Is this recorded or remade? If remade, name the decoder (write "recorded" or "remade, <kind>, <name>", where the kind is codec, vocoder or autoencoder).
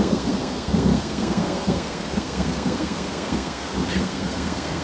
remade, codec, SNAC